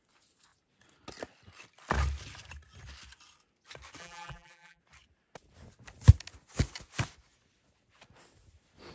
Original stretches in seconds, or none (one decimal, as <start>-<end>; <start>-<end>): 0.0-4.0; 4.8-8.9